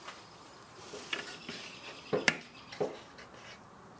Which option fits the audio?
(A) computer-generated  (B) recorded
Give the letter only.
B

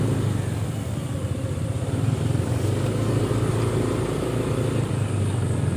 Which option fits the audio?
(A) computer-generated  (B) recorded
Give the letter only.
B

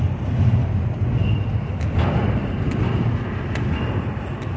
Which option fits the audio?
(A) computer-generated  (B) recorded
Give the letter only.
B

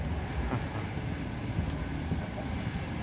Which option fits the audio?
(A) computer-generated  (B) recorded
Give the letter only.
B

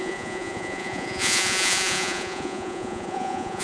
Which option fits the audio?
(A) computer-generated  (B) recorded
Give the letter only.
A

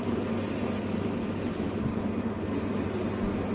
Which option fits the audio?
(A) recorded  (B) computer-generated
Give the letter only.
A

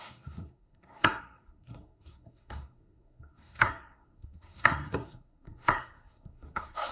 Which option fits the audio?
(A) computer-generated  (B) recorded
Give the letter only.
A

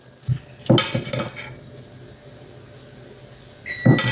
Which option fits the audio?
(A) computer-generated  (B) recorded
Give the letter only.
B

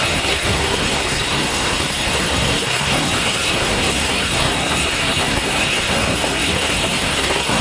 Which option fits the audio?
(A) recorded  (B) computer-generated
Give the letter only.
B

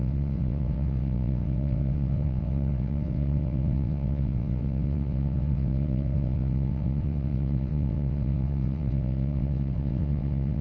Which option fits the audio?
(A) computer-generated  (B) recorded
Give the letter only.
A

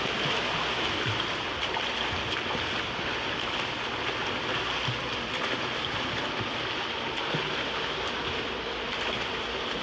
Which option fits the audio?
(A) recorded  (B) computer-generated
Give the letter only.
A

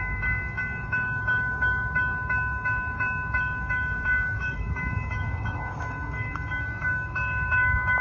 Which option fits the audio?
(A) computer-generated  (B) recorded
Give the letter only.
A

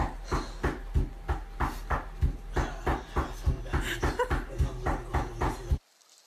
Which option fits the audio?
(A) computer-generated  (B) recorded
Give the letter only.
B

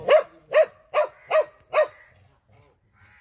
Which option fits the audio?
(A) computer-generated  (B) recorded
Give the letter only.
B